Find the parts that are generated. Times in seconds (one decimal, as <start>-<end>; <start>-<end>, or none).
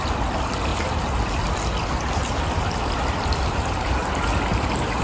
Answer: none